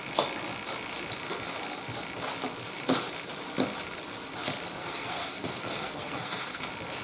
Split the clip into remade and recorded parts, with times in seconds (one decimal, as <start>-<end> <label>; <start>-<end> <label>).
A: 0.0-4.8 recorded; 4.8-6.6 remade; 6.6-7.0 recorded